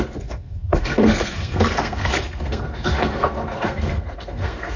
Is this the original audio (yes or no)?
no